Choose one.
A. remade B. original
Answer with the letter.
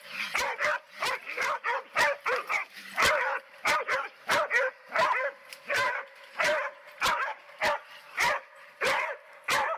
A